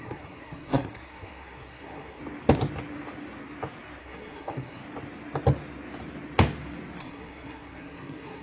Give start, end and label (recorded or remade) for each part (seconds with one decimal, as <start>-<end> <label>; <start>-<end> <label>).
0.0-2.2 remade; 2.2-4.0 recorded; 4.0-4.8 remade; 4.8-7.0 recorded; 7.0-8.4 remade